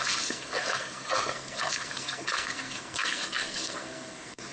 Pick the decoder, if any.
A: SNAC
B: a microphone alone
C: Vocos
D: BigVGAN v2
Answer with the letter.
A